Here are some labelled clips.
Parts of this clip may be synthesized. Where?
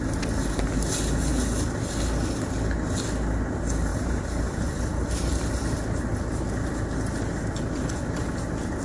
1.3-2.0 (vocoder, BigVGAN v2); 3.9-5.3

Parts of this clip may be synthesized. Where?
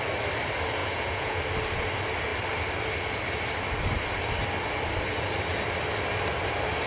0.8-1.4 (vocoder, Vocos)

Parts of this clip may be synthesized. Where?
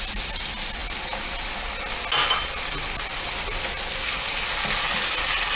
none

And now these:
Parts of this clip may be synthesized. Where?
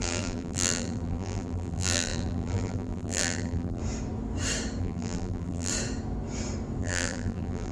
0.0-3.8 (vocoder, BigVGAN v2); 4.8-5.7; 6.8-7.7